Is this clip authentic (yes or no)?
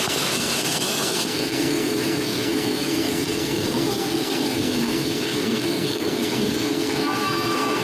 no